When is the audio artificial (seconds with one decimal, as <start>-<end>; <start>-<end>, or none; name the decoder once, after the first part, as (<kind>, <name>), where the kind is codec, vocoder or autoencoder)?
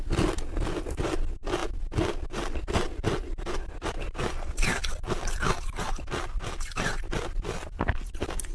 none